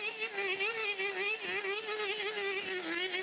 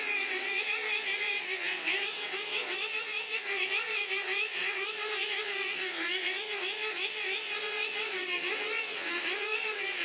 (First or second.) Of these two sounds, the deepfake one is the second